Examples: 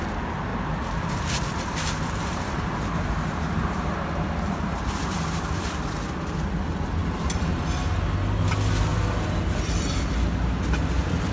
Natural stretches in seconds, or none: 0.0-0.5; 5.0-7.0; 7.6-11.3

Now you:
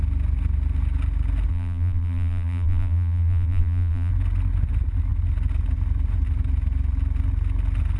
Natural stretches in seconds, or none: 0.0-1.5; 4.1-8.0

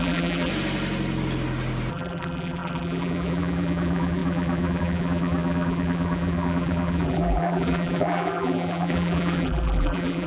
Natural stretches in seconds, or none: 0.5-1.9

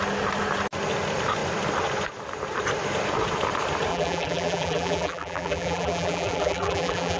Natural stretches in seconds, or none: 0.0-3.9